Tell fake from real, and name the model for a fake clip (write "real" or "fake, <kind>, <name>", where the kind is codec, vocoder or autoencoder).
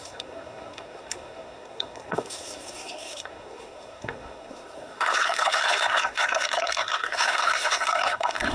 fake, codec, SNAC